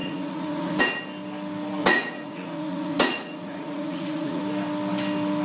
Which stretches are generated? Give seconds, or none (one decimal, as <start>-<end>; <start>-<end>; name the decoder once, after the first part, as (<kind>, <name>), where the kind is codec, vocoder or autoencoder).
0.0-0.8 (vocoder, Vocos); 1.8-4.4